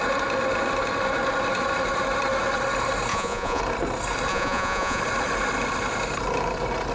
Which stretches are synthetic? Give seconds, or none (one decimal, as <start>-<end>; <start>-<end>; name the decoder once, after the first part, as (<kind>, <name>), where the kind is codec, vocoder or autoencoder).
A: 3.1-3.6 (vocoder, Vocos); 4.3-5.0